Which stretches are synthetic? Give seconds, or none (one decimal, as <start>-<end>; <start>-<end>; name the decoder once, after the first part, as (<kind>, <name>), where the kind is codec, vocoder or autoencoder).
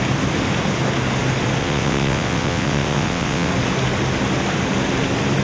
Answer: 1.6-3.5 (vocoder, WaveNeXt)